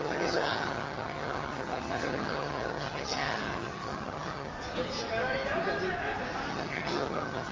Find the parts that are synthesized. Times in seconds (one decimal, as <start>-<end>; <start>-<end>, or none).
0.0-4.5; 6.5-7.5